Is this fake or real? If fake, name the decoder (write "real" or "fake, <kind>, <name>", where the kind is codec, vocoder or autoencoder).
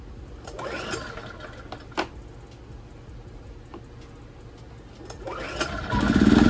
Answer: real